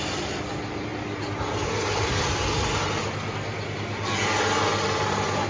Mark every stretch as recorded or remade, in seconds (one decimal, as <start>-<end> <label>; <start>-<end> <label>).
0.0-5.5 recorded